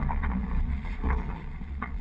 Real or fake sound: fake